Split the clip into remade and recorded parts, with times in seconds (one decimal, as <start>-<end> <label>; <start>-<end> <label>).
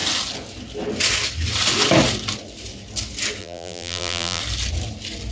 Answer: 0.0-3.4 recorded; 3.4-4.4 remade; 4.4-5.3 recorded